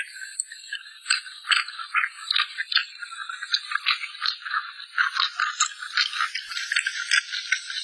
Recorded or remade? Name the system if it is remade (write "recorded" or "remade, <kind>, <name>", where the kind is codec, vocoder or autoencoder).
recorded